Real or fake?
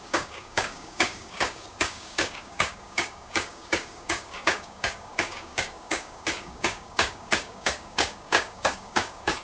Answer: fake